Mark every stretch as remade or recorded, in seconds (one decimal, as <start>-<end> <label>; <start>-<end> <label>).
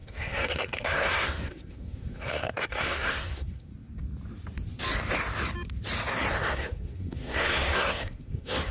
0.0-3.7 remade; 3.7-6.3 recorded; 6.3-8.7 remade